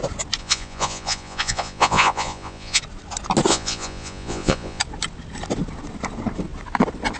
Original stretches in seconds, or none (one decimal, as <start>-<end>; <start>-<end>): 0.0-0.4; 2.8-3.5; 4.8-7.2